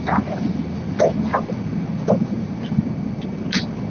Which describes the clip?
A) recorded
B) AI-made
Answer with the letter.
A